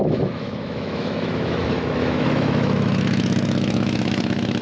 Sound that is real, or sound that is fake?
fake